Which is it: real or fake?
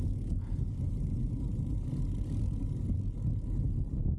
real